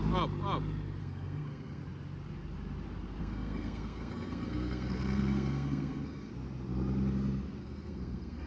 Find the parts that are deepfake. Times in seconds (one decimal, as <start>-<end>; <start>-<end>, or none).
1.0-1.8; 3.2-6.3; 7.6-8.5